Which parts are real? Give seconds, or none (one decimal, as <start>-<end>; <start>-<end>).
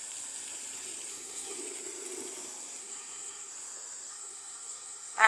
0.0-1.1; 1.6-2.8; 3.5-4.1